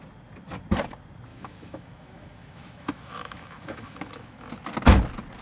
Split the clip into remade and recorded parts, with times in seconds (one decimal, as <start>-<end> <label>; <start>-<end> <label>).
0.0-1.3 recorded; 1.3-4.5 remade; 4.5-5.4 recorded